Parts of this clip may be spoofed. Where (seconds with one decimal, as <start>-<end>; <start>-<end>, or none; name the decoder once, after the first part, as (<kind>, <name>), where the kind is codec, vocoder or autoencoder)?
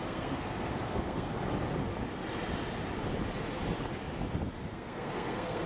0.0-1.3 (codec, SNAC); 4.7-5.7